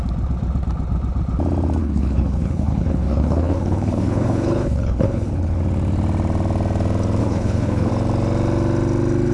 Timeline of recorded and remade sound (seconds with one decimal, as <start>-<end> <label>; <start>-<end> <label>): 0.0-1.8 recorded; 1.8-5.6 remade; 5.6-7.2 recorded; 7.2-7.9 remade; 7.9-9.3 recorded

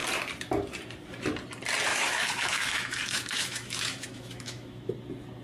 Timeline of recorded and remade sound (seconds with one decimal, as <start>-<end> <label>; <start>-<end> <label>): 0.0-1.9 recorded; 1.9-4.9 remade; 4.9-5.4 recorded

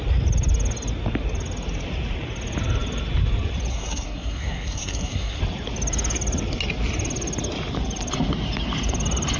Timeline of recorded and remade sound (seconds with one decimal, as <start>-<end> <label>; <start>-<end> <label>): 0.0-3.7 recorded; 3.7-5.4 remade; 5.4-9.4 recorded

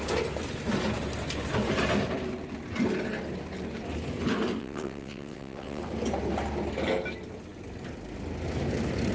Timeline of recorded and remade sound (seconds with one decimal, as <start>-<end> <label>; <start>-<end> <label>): 0.0-4.6 recorded; 4.6-5.8 remade; 5.8-9.1 recorded